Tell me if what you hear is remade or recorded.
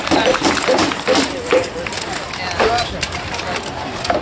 recorded